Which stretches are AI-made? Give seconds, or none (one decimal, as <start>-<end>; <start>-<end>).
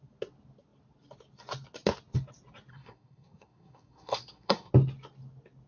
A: 2.7-4.7